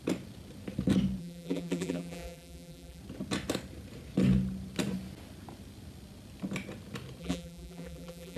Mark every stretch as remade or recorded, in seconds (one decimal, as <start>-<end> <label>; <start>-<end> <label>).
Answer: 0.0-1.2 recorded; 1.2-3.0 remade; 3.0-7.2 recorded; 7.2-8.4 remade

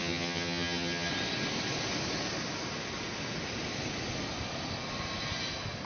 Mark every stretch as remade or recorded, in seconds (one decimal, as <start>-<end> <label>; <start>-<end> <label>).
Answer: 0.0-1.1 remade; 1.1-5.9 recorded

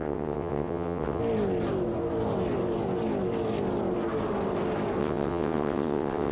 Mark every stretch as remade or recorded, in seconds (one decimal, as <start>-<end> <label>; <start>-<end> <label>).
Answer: 0.0-1.2 remade; 1.2-5.0 recorded; 5.0-6.3 remade